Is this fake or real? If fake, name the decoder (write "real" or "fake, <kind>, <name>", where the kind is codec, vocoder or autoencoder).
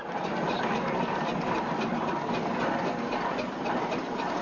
real